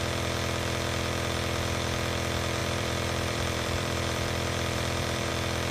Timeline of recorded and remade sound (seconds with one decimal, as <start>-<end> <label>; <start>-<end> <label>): 0.0-2.6 recorded; 2.6-5.3 remade; 5.3-5.7 recorded